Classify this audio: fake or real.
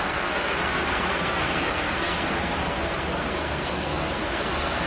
fake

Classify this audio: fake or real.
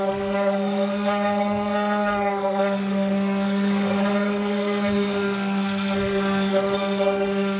fake